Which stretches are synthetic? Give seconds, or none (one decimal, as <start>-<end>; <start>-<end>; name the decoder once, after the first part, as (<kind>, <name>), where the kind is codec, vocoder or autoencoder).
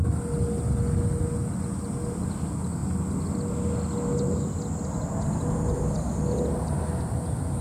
none